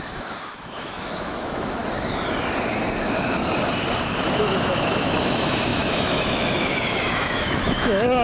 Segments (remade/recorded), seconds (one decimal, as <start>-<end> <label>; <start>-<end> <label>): 0.0-1.8 remade; 1.8-4.4 recorded; 4.4-8.2 remade